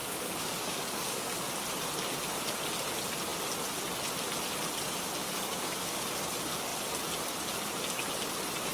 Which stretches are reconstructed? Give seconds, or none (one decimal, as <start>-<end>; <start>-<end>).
0.0-1.4; 5.2-6.1